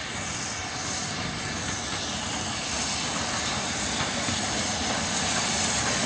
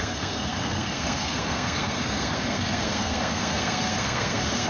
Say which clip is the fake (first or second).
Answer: second